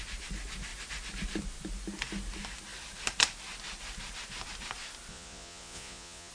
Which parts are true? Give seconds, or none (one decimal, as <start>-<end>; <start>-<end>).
0.0-5.1